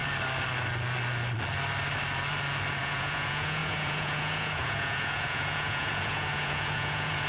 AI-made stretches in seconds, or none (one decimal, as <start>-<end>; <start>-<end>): 2.8-7.3